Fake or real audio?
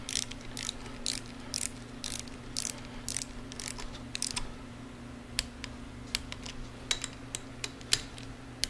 real